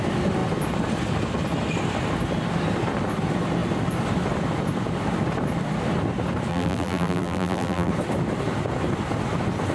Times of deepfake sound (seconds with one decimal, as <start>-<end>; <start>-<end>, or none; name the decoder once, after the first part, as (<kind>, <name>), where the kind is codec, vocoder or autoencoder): 6.5-7.9 (vocoder, BigVGAN v2)